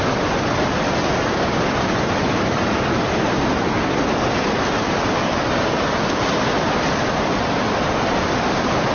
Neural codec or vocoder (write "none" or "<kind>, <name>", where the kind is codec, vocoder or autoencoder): none